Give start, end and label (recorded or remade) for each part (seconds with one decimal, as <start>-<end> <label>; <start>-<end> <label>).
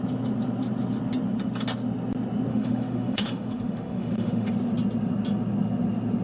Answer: 0.0-2.5 recorded; 2.5-4.5 remade; 4.5-6.2 recorded